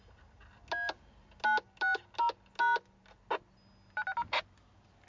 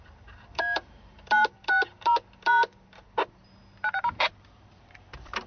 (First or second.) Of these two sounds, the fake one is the second